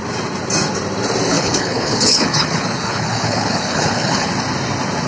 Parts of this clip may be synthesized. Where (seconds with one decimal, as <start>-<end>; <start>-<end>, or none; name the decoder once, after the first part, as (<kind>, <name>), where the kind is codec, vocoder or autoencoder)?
1.3-4.3 (codec, HILCodec)